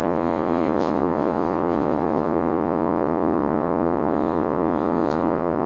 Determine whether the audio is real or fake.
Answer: fake